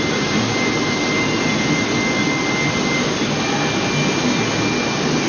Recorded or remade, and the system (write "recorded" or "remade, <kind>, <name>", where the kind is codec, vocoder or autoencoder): recorded